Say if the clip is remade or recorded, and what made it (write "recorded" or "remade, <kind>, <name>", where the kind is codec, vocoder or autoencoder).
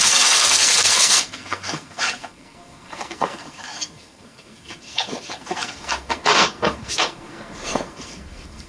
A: remade, codec, SNAC